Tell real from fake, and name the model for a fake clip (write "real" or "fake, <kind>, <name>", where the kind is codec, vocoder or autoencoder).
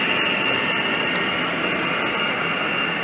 real